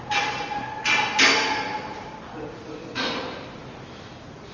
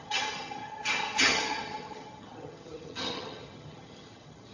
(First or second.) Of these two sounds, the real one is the first